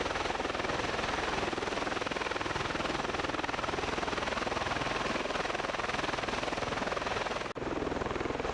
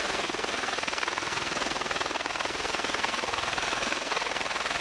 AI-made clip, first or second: second